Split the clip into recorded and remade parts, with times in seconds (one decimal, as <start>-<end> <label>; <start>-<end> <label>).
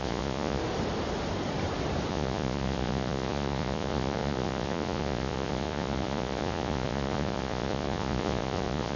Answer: 0.0-0.6 remade; 0.6-2.1 recorded; 2.1-9.0 remade